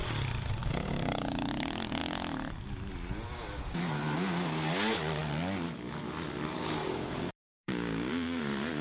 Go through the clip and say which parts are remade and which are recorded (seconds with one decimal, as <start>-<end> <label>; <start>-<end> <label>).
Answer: 0.0-0.6 recorded; 0.6-1.5 remade; 1.5-6.8 recorded; 6.8-8.4 remade; 8.4-8.8 recorded

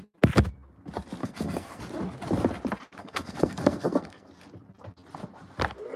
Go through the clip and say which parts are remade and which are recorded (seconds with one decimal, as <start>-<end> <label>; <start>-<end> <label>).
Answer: 0.0-1.2 recorded; 1.2-1.8 remade; 1.8-3.0 recorded; 3.0-4.3 remade; 4.3-6.0 recorded

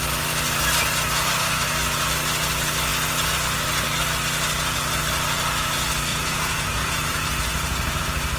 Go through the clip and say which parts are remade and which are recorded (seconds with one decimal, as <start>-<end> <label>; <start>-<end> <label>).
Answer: 0.0-6.1 recorded; 6.1-8.0 remade; 8.0-8.4 recorded